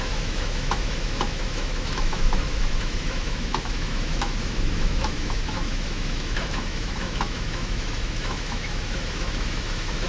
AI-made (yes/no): yes